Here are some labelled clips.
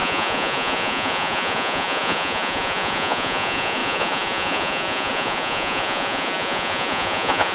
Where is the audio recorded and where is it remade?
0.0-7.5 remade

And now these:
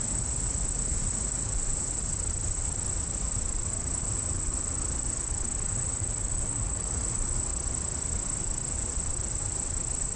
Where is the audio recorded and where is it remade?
0.0-2.0 remade; 2.0-5.7 recorded; 5.7-7.5 remade; 7.5-10.2 recorded

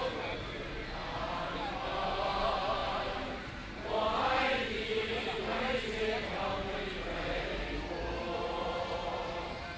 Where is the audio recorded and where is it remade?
0.0-2.8 recorded; 2.8-3.9 remade; 3.9-4.9 recorded; 4.9-5.4 remade; 5.4-9.8 recorded

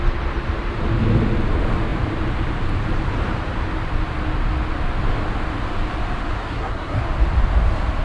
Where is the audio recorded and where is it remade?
0.0-6.4 recorded; 6.4-7.0 remade; 7.0-8.0 recorded